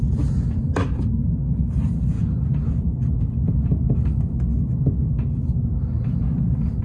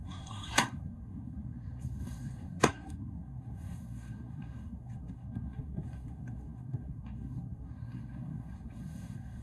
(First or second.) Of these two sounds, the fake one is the second